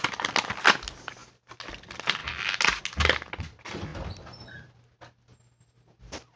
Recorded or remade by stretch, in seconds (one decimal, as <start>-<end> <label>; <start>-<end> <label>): 0.0-6.4 recorded